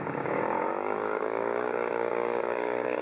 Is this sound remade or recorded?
remade